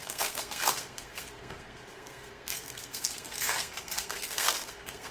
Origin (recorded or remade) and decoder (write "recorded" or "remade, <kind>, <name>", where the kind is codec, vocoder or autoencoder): remade, codec, SNAC